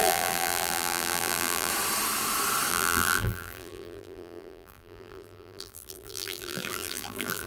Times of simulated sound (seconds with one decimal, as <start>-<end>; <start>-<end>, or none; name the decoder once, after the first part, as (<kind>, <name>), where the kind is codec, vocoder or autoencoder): 0.0-1.7 (vocoder, BigVGAN v2); 2.7-7.5